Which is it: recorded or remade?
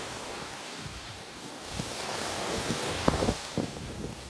remade